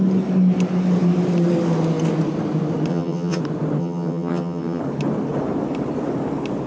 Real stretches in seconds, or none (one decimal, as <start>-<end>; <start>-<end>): 0.0-2.9; 3.4-3.8; 4.8-6.7